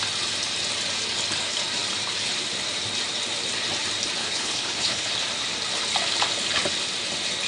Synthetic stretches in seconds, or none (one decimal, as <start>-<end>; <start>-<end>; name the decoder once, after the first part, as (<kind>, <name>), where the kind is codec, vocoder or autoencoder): 4.2-5.1 (codec, HILCodec)